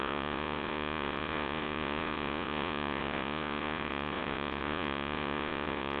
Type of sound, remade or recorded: remade